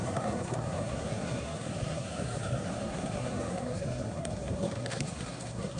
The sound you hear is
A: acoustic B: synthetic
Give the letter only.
B